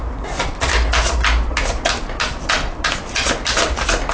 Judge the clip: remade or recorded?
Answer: recorded